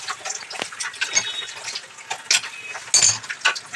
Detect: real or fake real